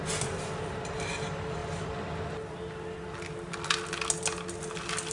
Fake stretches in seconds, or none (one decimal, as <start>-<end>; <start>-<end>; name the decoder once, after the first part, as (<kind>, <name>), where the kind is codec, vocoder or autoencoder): none